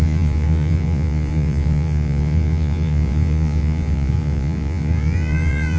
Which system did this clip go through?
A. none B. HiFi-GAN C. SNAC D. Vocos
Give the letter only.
D